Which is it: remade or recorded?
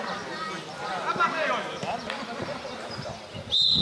recorded